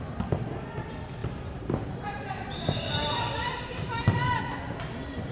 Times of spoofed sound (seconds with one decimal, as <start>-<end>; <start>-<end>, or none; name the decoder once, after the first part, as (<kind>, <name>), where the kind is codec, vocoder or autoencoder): 1.2-4.4 (vocoder, BigVGAN v2)